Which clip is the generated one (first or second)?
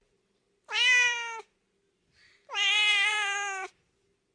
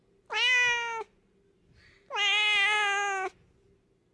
first